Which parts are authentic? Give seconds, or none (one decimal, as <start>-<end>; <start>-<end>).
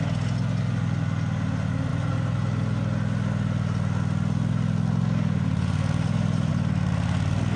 0.0-7.6